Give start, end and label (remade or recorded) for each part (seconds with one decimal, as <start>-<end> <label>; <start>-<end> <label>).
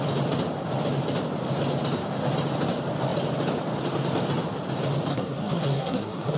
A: 0.0-5.1 recorded; 5.1-6.4 remade